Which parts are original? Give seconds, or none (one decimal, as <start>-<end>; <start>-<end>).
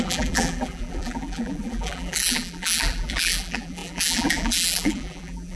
none